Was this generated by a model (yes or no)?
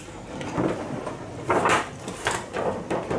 yes